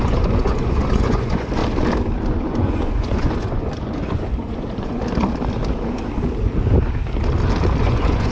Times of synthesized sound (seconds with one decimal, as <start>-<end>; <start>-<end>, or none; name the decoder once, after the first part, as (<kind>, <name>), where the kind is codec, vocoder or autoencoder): 0.0-1.6 (vocoder, Vocos); 2.4-5.0; 7.8-8.3